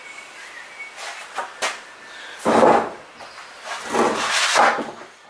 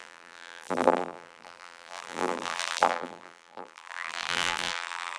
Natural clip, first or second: first